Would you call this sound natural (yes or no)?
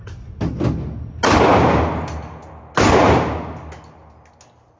yes